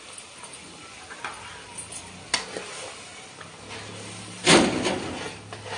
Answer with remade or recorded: recorded